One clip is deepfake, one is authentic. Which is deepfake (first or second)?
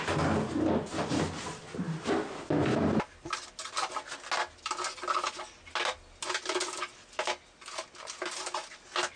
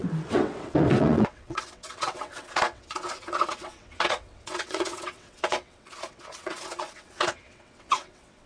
second